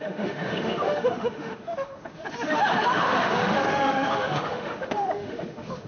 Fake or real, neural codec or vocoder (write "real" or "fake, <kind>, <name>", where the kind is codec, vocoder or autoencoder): fake, autoencoder, DAC-VAE